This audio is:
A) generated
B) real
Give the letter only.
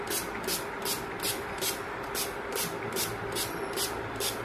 B